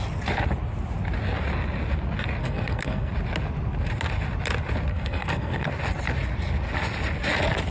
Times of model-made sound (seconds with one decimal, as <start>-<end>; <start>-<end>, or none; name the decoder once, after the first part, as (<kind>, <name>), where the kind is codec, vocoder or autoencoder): 2.4-3.1 (codec, SNAC); 4.9-5.7